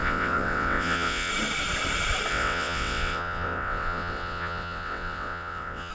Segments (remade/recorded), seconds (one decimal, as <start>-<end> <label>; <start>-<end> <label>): 0.0-1.3 remade; 1.3-2.3 recorded; 2.3-5.9 remade